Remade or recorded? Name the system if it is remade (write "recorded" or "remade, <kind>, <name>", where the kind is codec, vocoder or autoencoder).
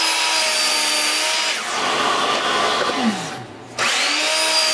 recorded